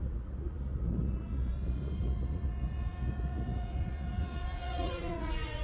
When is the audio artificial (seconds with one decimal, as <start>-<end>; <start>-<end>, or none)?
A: 0.0-5.6